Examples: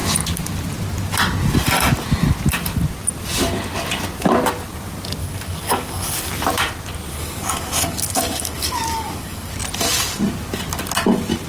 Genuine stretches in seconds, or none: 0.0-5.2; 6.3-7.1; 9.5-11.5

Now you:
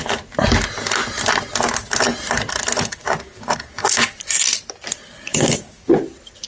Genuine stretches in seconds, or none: 0.0-3.0; 4.1-5.3; 6.0-6.5

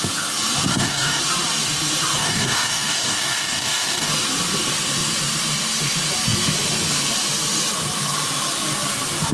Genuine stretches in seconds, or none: 0.0-0.7; 1.2-2.2; 4.1-9.3

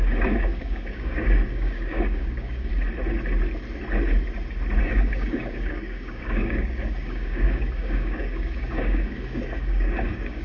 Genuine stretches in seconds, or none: 2.7-4.8

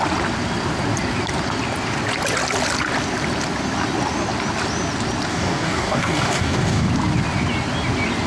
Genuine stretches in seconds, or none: 0.0-5.3; 6.9-8.3

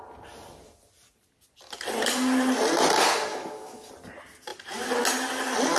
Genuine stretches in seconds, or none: 0.0-3.3; 3.9-5.8